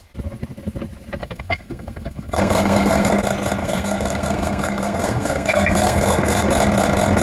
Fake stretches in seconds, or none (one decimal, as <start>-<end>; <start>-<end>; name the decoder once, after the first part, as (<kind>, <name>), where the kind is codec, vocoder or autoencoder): 1.2-3.1 (codec, SNAC); 3.6-6.5